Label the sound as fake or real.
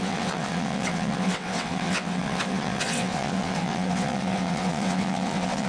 fake